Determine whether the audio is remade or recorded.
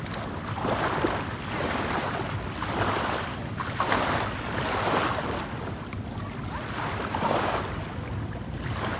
recorded